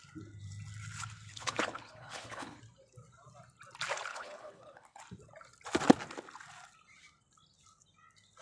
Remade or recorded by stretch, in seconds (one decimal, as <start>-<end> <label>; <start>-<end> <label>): 0.0-1.3 recorded; 1.3-2.6 remade; 2.6-4.1 recorded; 4.1-5.0 remade; 5.0-8.4 recorded